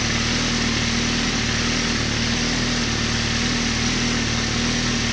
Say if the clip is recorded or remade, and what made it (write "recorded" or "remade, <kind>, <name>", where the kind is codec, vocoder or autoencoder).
recorded